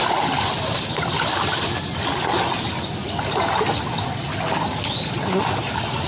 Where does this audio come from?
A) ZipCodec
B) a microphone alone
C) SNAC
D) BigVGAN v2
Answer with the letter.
B